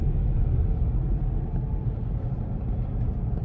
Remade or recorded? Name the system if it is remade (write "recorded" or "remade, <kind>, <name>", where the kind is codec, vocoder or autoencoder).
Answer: recorded